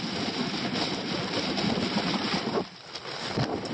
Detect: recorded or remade remade